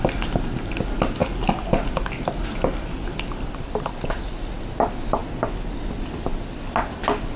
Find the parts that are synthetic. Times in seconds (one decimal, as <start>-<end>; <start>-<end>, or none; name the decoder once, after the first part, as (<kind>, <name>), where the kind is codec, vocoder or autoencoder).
none